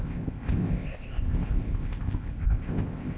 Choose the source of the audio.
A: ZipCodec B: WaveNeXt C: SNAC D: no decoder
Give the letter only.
A